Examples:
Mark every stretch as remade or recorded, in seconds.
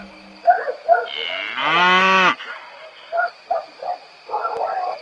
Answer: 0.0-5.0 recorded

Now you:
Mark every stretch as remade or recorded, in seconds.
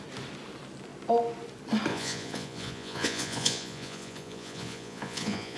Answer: 0.0-1.9 recorded; 1.9-5.6 remade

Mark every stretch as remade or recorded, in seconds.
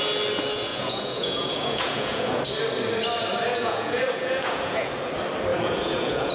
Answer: 0.0-0.7 recorded; 0.7-2.4 remade; 2.4-3.5 recorded; 3.5-5.1 remade; 5.1-5.5 recorded; 5.5-6.3 remade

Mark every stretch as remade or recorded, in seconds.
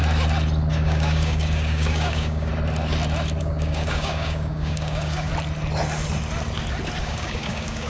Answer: 0.0-0.7 recorded; 0.7-2.5 remade; 2.5-3.4 recorded; 3.4-5.3 remade; 5.3-7.0 recorded; 7.0-7.9 remade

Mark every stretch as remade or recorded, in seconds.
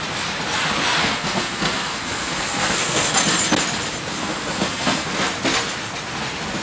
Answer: 0.0-1.0 recorded; 1.0-3.1 remade; 3.1-4.1 recorded; 4.1-5.1 remade; 5.1-6.6 recorded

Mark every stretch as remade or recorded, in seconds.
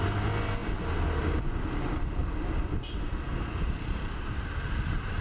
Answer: 0.0-5.2 recorded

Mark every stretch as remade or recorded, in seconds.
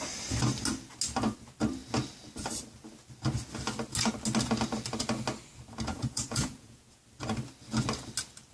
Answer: 0.0-5.9 recorded; 5.9-7.0 remade; 7.0-8.5 recorded